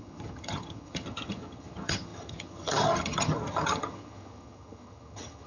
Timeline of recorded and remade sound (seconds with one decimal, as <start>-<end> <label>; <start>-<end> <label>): 0.0-5.5 remade